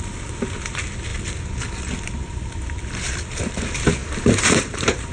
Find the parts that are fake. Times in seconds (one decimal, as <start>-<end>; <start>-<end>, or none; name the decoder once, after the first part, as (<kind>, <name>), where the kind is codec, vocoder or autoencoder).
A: 4.0-5.1 (vocoder, BigVGAN v2)